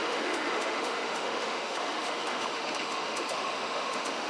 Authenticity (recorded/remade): remade